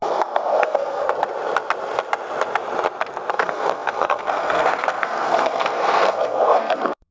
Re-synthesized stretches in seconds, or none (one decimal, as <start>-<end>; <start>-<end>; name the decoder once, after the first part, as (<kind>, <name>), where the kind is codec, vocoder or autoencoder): 0.0-1.0 (codec, SNAC); 3.3-7.1